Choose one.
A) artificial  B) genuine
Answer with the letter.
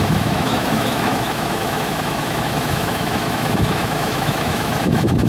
A